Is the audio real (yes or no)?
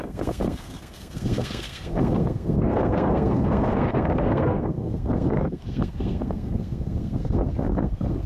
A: no